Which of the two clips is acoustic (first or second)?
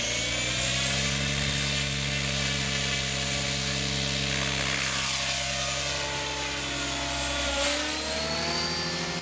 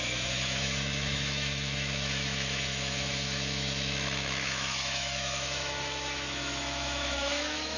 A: first